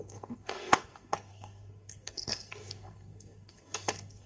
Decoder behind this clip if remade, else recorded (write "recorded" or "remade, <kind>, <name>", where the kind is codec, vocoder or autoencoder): remade, codec, SNAC